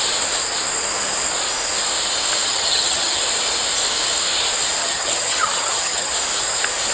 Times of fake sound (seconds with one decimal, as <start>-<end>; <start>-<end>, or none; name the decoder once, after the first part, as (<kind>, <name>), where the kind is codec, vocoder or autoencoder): 2.5-3.2 (vocoder, HiFi-GAN); 4.8-6.1